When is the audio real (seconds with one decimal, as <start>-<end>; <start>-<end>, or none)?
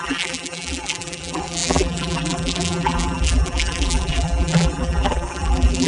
none